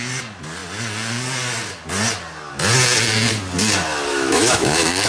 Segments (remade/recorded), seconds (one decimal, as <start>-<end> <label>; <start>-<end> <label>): 0.0-4.1 recorded; 4.1-5.1 remade